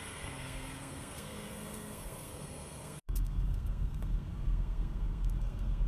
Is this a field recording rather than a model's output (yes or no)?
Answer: no